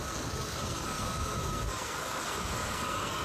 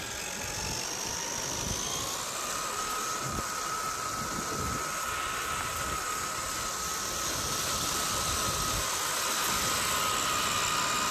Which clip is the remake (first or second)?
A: first